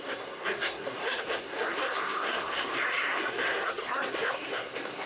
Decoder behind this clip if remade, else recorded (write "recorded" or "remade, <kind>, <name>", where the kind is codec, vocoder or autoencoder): remade, codec, SNAC